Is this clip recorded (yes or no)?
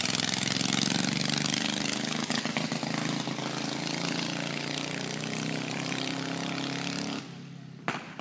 yes